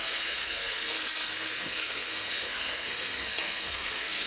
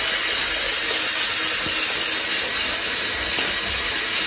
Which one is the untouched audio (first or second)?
second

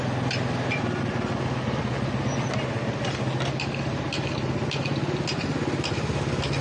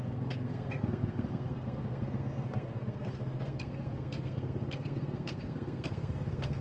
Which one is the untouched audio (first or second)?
first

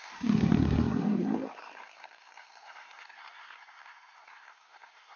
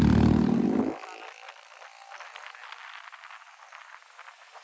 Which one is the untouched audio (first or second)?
second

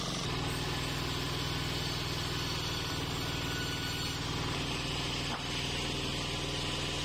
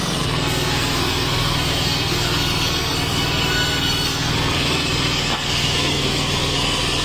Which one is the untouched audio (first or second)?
first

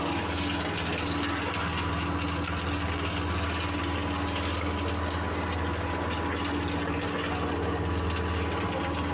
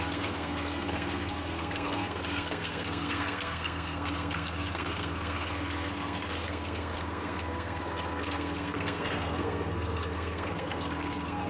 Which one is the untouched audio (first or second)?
first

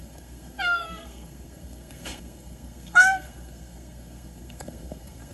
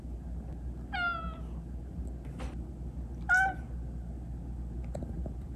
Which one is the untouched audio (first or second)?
second